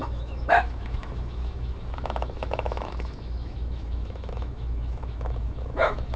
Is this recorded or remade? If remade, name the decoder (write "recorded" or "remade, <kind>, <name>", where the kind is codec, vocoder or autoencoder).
remade, autoencoder, DAC-VAE